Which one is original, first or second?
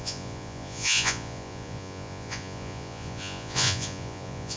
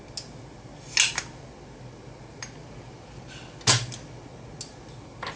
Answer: second